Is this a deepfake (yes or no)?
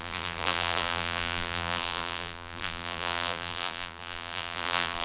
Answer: yes